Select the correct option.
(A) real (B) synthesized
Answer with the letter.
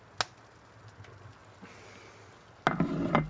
A